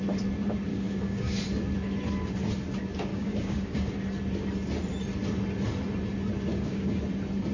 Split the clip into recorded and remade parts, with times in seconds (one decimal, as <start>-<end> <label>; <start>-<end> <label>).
0.0-0.7 recorded; 0.7-1.4 remade; 1.4-3.1 recorded; 3.1-3.9 remade; 3.9-6.5 recorded; 6.5-7.0 remade; 7.0-7.5 recorded